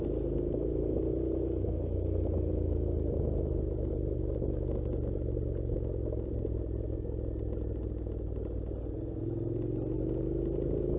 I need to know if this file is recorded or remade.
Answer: recorded